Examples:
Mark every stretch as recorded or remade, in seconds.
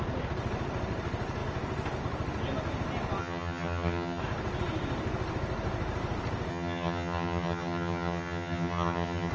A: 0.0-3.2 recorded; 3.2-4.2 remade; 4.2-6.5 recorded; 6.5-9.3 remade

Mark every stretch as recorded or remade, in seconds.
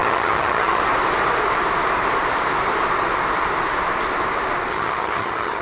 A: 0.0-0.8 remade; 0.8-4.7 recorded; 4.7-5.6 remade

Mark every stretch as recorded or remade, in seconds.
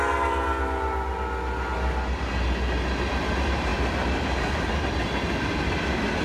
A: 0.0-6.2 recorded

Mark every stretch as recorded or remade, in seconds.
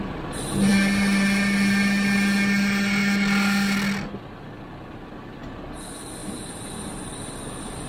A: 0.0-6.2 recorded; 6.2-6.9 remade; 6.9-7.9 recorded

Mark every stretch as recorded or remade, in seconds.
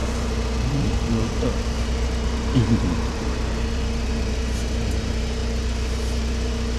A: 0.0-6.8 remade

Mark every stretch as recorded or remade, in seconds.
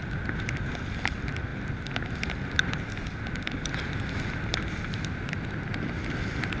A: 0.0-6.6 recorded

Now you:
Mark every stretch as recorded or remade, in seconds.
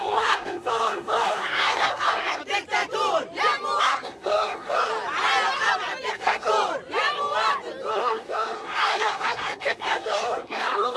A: 0.0-2.4 remade; 2.4-3.8 recorded; 3.8-4.9 remade; 4.9-6.1 recorded; 6.1-6.5 remade; 6.5-7.9 recorded; 7.9-11.0 remade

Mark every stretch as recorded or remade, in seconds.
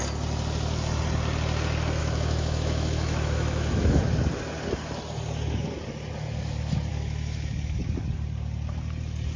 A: 0.0-2.0 recorded; 2.0-4.0 remade; 4.0-6.9 recorded; 6.9-7.8 remade; 7.8-9.4 recorded